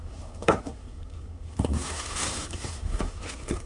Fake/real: fake